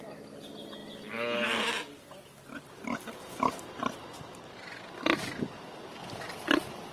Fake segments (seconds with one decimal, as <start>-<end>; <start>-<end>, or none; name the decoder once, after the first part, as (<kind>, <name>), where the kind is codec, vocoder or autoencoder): none